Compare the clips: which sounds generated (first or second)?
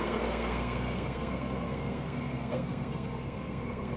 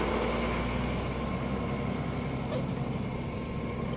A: first